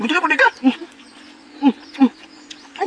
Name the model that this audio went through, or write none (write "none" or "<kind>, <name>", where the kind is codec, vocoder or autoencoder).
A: vocoder, Vocos